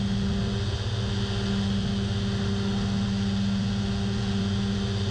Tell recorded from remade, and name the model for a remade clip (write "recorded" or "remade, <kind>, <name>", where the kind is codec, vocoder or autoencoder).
recorded